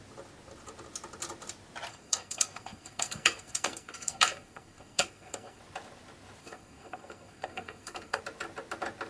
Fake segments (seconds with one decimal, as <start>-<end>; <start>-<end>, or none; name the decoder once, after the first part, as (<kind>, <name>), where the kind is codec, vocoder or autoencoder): 1.9-5.6 (codec, SNAC); 6.4-8.2